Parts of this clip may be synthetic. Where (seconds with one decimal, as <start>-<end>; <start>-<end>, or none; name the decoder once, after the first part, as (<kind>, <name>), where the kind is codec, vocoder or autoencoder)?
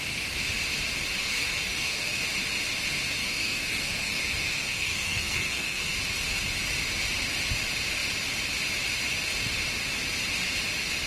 1.2-2.2 (codec, SNAC); 3.2-5.9